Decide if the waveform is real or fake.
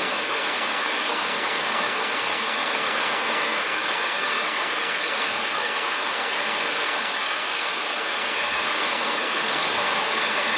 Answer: fake